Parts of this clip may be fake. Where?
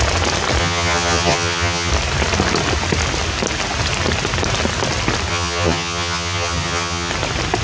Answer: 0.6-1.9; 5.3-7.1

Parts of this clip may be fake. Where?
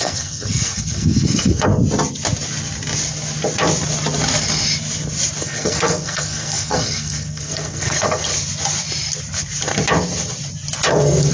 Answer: 0.0-1.7; 5.4-8.3; 10.9-11.3